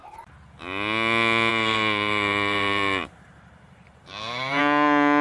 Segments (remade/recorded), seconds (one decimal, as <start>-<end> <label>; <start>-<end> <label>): 0.0-1.5 recorded; 1.5-4.6 remade; 4.6-5.2 recorded